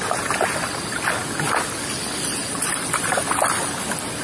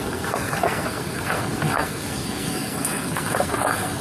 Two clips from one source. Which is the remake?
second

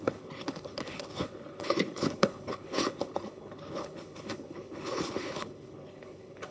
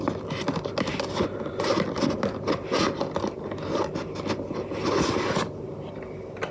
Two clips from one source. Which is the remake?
first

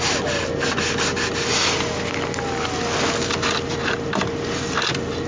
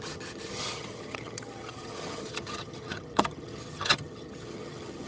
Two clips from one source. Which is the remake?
second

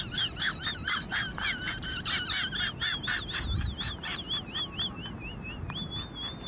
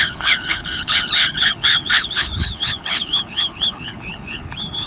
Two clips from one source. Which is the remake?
second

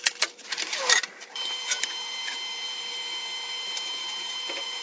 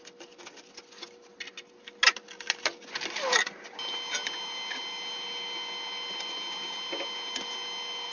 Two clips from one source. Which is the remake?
first